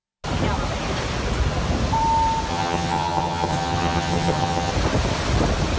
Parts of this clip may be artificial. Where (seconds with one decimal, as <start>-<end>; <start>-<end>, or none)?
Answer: 2.5-4.7